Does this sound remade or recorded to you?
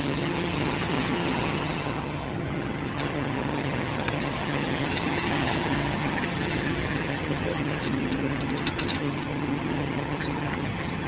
remade